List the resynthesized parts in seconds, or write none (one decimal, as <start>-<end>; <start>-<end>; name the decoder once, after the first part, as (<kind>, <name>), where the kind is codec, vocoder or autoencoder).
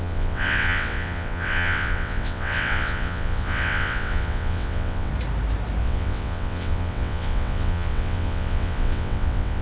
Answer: 0.0-5.1 (vocoder, WaveNeXt); 5.8-9.6